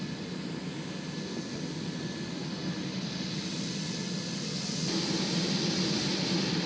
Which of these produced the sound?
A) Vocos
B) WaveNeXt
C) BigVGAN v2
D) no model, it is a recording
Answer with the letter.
D